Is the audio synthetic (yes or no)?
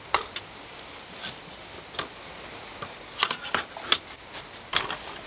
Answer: no